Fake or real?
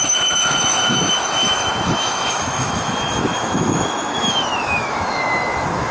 fake